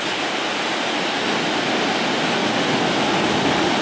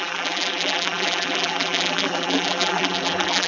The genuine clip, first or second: first